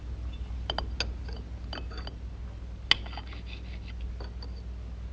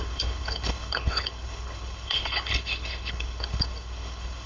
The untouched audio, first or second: first